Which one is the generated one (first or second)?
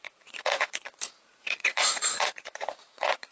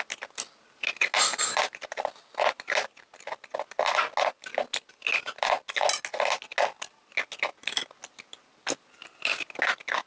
first